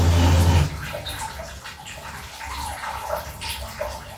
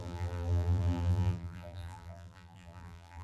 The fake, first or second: second